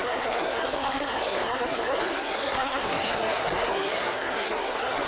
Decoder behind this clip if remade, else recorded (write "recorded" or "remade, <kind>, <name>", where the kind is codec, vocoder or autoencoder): remade, codec, SNAC